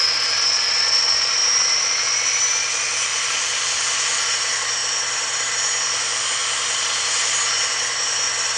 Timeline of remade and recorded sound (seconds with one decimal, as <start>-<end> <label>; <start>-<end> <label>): 0.0-3.1 recorded; 3.1-4.3 remade; 4.3-8.6 recorded